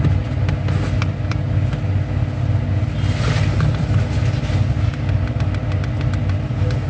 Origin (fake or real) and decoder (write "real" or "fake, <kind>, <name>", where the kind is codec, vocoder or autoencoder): real